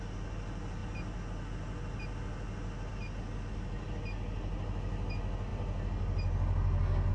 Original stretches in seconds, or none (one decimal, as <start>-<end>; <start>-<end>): 0.0-7.1